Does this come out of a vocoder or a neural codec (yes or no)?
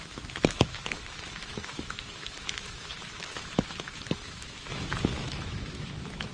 yes